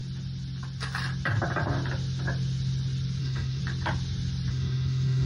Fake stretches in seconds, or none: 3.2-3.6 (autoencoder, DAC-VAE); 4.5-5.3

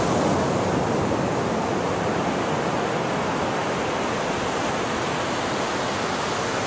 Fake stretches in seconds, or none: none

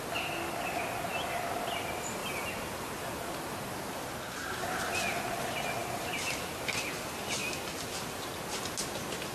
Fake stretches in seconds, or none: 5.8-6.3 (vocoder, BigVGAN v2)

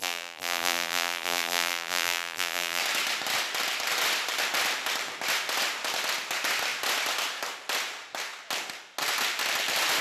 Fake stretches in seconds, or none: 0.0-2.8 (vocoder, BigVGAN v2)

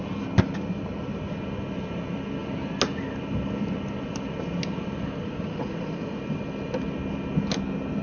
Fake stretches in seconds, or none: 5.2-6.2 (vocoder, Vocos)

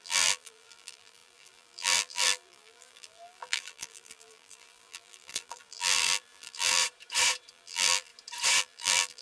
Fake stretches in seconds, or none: 0.0-6.8 (vocoder, BigVGAN v2); 7.5-8.1; 8.6-9.2